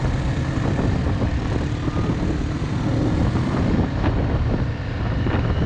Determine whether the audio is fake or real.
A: real